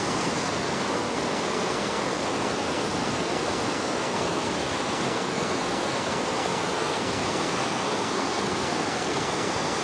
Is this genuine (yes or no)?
no